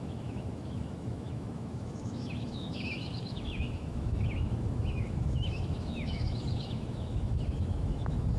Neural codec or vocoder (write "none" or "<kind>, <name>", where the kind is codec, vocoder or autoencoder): autoencoder, DAC-VAE